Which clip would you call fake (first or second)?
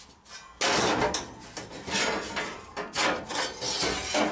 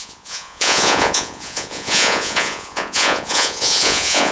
second